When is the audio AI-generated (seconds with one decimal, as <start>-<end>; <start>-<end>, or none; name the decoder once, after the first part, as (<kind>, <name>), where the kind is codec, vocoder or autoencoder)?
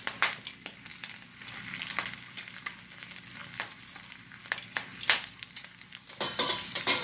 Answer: 4.9-7.0 (vocoder, BigVGAN v2)